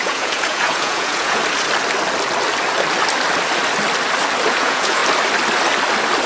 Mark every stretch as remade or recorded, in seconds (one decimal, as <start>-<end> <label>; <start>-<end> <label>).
0.0-1.4 remade; 1.4-4.5 recorded; 4.5-5.0 remade; 5.0-6.3 recorded